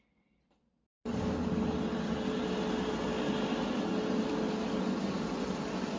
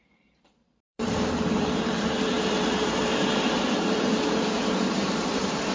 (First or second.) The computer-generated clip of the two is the second